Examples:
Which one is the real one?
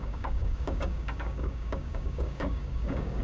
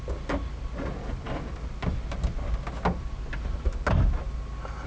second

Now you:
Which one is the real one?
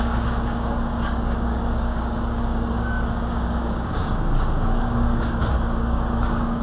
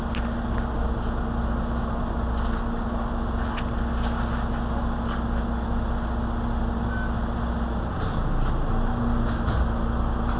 second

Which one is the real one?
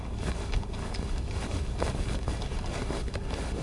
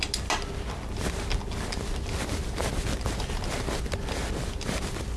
second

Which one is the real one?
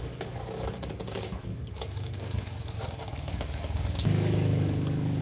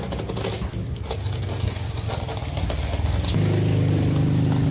second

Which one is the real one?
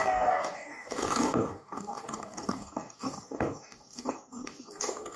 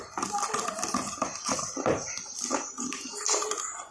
second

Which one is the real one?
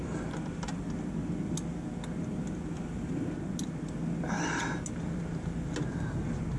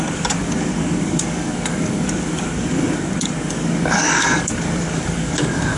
first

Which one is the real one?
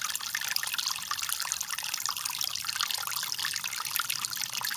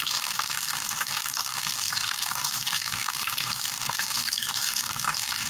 first